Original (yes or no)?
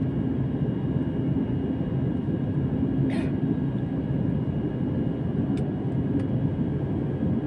yes